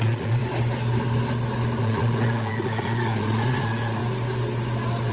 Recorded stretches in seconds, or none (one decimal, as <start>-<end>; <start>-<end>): 0.4-1.8; 4.0-5.1